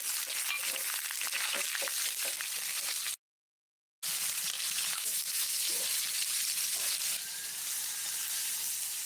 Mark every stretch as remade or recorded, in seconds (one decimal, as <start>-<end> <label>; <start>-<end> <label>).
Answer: 0.0-4.9 recorded; 4.9-5.8 remade; 5.8-9.1 recorded